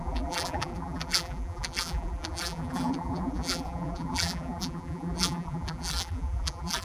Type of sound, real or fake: fake